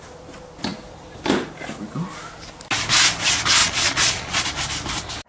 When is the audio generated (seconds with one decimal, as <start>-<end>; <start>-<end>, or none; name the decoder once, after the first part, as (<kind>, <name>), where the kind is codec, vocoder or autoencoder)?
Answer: 3.6-4.5 (vocoder, Vocos)